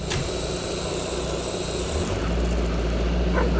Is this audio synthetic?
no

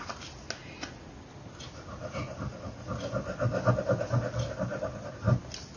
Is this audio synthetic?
no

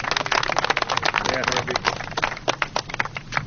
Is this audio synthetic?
no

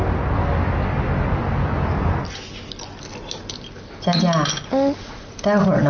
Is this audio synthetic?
no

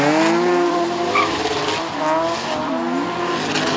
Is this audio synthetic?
no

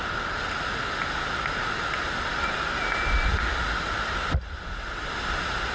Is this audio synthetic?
no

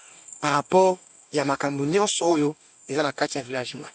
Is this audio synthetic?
yes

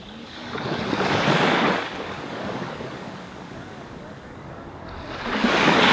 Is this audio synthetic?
yes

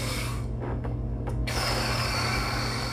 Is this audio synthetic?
yes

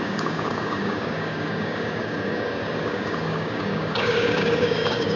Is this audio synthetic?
yes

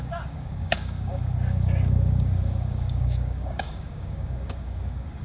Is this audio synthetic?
yes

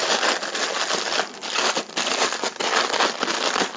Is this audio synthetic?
no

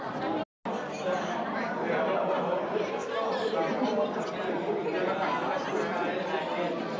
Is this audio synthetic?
no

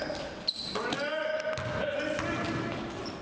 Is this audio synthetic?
no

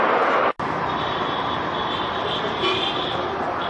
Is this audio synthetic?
no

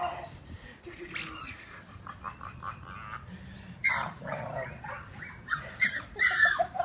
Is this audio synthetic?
no